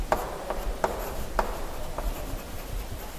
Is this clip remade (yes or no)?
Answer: no